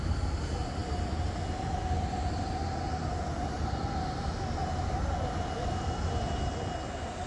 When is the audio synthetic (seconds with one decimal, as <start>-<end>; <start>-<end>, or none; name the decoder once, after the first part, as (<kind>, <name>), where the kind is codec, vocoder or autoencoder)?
none